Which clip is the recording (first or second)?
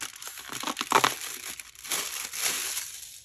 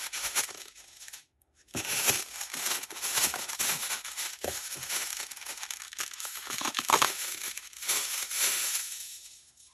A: first